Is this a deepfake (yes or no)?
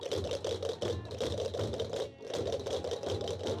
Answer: no